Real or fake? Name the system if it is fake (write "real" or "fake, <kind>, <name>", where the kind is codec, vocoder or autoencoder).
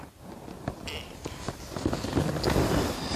real